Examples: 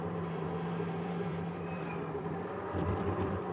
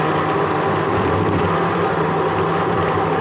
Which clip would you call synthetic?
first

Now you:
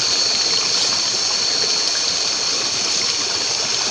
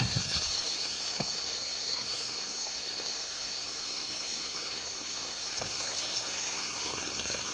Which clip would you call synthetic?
second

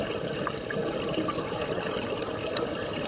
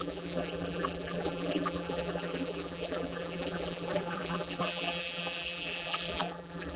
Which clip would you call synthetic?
second